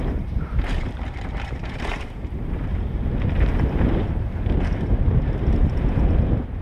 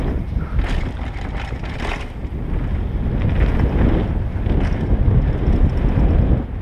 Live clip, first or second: second